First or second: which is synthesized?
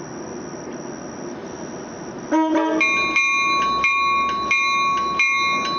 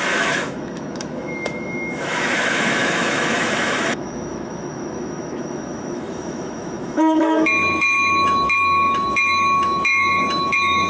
second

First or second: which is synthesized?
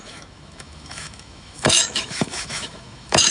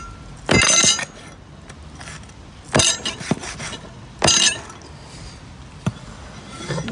first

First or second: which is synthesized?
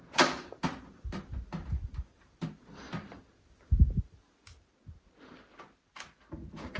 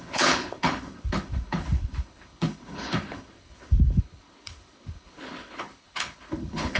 second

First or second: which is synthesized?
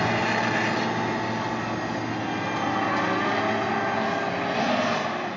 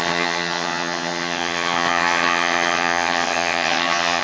second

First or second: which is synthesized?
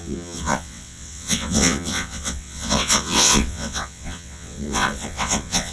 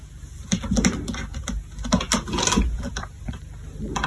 first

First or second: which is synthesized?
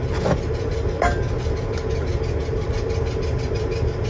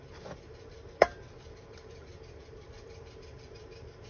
second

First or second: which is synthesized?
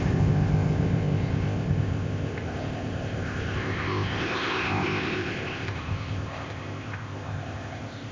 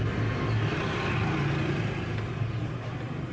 first